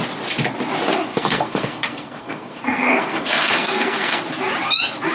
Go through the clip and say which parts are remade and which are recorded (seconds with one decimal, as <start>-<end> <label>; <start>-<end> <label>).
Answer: 0.0-1.1 recorded; 1.1-4.2 remade; 4.2-5.1 recorded